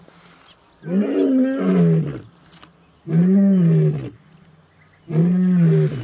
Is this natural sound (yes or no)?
yes